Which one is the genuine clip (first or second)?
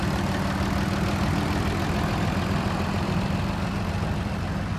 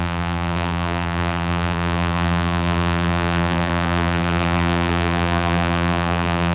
first